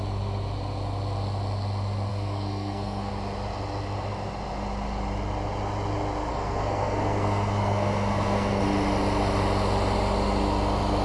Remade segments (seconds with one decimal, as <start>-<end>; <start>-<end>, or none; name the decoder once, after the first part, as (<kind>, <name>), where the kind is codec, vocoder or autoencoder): 2.1-3.1 (codec, SNAC); 6.3-8.6